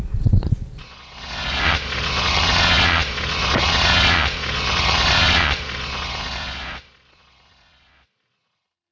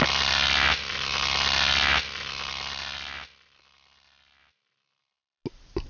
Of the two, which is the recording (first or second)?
second